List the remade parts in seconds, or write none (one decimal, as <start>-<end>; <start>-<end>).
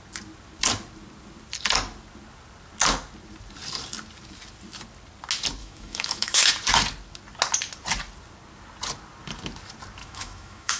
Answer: 5.6-6.5; 10.0-10.8